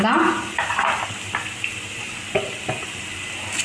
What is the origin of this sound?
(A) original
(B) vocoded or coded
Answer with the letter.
A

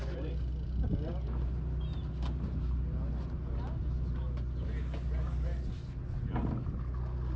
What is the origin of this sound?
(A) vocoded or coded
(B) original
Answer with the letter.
B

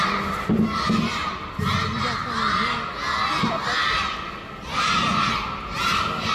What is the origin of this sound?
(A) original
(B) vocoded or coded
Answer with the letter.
A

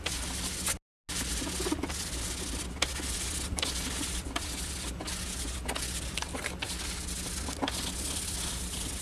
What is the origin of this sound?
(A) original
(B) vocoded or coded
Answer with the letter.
A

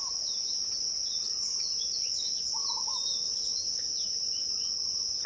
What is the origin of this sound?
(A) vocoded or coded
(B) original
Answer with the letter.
B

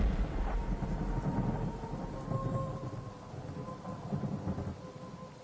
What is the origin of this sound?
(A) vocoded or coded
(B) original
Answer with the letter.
B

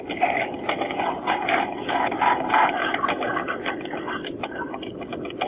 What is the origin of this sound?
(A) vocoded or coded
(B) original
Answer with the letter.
B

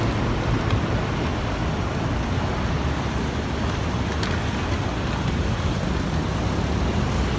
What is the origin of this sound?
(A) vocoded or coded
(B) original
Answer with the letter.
B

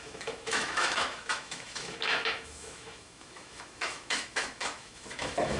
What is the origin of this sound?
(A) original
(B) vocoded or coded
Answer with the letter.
B